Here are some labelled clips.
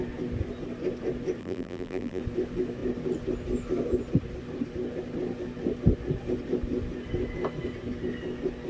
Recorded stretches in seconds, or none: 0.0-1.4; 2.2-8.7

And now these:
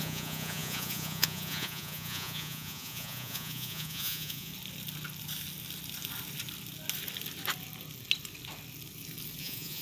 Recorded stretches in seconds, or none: 4.5-9.4

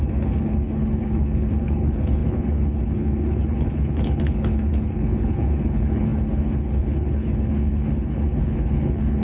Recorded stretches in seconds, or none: none

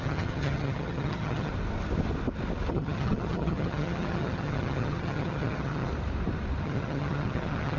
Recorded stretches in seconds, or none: 1.5-2.7; 5.9-6.6

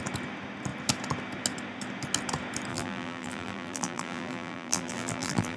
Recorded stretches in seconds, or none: 0.0-2.7

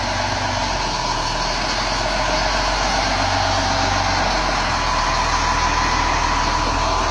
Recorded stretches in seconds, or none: 0.0-7.1